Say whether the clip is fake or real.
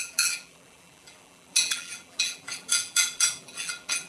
fake